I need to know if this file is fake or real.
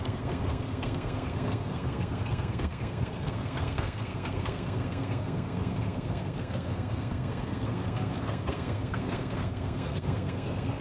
fake